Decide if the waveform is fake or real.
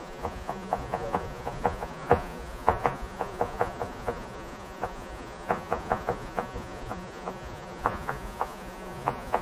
fake